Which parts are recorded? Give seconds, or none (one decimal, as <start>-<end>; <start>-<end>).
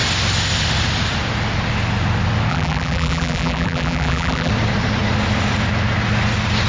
0.0-2.5; 4.5-6.7